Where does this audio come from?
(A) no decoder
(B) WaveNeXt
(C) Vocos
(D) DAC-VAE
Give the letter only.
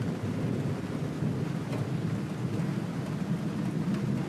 A